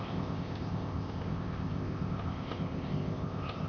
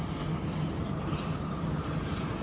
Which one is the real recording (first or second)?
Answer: second